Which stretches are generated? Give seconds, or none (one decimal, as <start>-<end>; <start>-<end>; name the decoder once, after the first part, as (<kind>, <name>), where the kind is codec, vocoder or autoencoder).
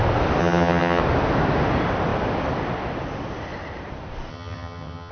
0.4-1.0 (vocoder, HiFi-GAN); 4.3-5.1